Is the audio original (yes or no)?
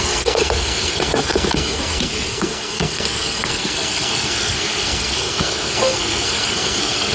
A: no